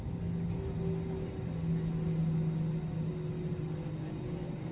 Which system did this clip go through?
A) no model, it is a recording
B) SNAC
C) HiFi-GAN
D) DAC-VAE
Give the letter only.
A